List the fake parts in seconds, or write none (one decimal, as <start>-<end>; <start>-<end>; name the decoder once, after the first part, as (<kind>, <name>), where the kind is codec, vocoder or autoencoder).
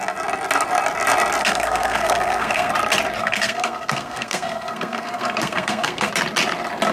1.4-2.7 (codec, SNAC); 3.2-6.1